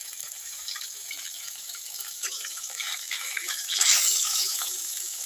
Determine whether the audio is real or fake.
fake